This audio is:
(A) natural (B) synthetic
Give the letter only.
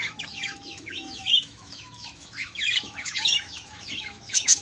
B